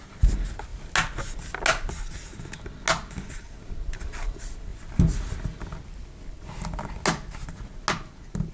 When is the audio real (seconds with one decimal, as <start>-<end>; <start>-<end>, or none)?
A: 0.0-4.7; 5.2-8.5